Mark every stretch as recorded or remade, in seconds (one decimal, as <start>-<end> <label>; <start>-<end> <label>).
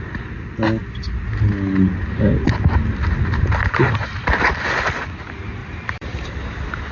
0.0-5.6 recorded; 5.6-6.3 remade; 6.3-6.9 recorded